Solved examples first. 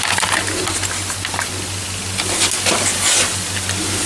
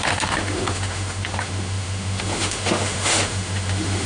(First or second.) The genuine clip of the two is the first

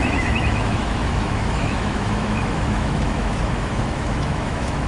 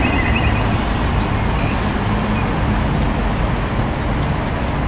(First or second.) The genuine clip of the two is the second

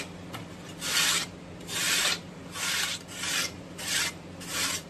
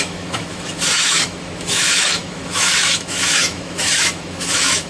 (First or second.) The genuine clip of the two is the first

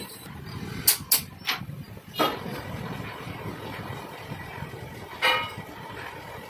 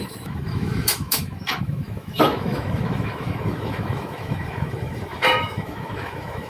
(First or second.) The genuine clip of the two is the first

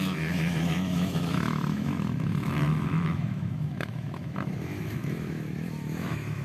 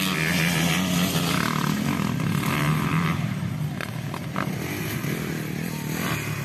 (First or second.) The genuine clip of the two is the second